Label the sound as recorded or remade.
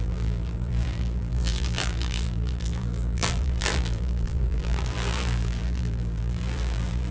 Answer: remade